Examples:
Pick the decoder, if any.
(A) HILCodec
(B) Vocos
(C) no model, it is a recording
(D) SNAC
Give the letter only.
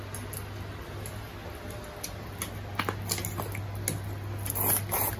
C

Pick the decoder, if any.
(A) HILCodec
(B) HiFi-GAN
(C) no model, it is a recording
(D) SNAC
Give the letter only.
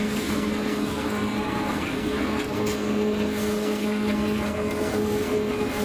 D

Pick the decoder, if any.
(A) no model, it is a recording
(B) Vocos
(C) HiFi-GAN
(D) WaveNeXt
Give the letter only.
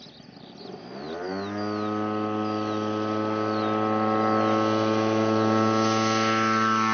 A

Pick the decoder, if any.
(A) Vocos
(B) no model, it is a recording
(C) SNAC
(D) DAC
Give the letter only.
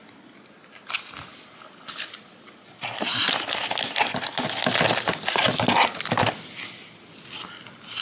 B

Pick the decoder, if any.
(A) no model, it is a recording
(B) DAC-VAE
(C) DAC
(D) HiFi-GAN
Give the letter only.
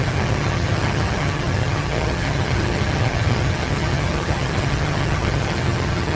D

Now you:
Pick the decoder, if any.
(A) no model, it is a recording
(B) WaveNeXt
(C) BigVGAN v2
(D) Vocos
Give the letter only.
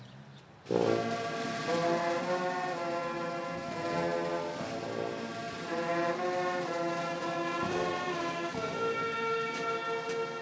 A